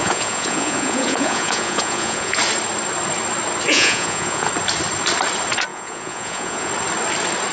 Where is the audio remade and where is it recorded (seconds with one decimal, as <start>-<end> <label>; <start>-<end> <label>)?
0.0-2.4 remade; 2.4-3.7 recorded; 3.7-4.5 remade; 4.5-5.7 recorded; 5.7-6.7 remade; 6.7-7.5 recorded